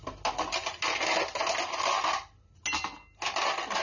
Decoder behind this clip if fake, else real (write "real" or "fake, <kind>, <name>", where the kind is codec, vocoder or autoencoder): real